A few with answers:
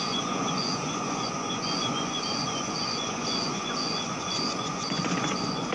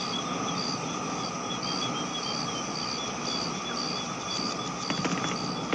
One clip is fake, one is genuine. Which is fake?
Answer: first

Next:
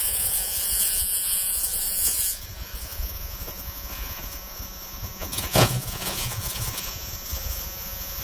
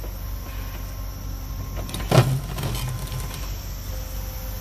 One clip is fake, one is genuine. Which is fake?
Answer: first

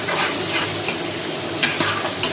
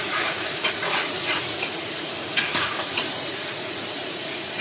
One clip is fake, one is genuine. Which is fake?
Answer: second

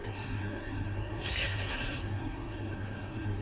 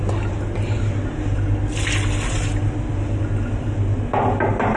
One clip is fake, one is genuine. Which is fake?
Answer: first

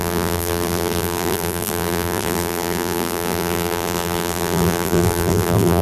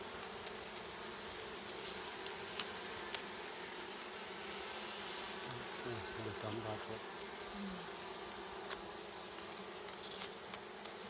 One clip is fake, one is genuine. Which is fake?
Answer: first